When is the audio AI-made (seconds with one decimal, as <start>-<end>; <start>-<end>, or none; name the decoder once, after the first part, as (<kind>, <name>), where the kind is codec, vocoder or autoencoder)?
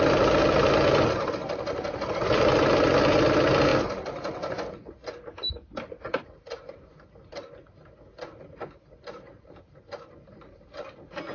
none